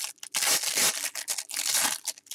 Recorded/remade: recorded